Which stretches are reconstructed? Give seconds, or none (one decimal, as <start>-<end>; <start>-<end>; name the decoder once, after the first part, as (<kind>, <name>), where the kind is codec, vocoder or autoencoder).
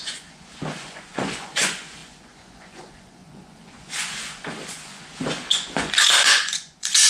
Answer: 0.0-7.1 (vocoder, Vocos)